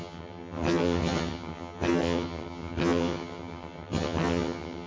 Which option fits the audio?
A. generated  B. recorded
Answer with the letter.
A